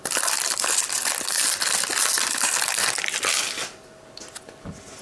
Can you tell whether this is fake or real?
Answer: real